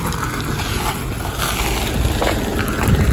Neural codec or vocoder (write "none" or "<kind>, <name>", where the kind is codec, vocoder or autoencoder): none